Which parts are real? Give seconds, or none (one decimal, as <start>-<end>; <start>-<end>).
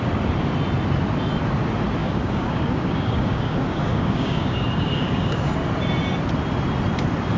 0.0-2.0; 5.5-7.4